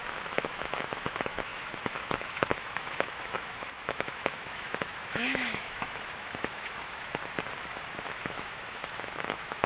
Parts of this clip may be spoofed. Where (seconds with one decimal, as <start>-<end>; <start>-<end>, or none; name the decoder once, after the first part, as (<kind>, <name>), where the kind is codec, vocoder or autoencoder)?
0.0-7.2 (autoencoder, DAC-VAE); 7.7-9.7